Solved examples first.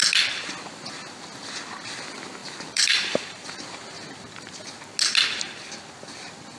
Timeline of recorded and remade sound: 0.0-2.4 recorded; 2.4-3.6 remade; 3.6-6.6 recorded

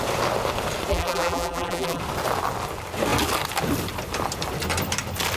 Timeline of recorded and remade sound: 0.0-0.9 recorded; 0.9-2.0 remade; 2.0-5.4 recorded

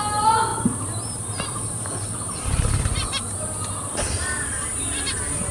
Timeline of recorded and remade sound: 0.0-5.5 recorded